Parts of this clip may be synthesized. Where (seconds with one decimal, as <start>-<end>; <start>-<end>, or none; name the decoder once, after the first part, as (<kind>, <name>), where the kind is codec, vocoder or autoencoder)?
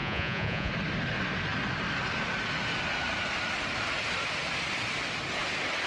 0.0-0.7 (vocoder, Vocos)